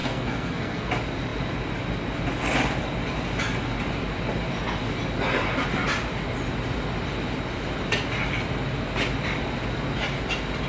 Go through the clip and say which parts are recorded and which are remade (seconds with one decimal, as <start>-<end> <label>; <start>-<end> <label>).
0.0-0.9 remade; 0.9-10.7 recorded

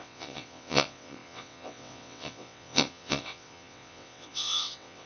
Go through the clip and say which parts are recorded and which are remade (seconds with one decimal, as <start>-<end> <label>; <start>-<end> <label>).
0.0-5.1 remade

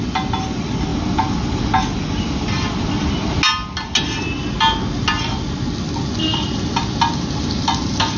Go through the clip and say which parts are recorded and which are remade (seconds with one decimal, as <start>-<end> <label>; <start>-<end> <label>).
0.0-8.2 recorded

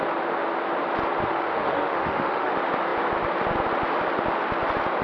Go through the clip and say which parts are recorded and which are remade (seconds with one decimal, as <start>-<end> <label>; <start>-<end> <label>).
0.0-1.2 recorded; 1.2-2.5 remade; 2.5-5.0 recorded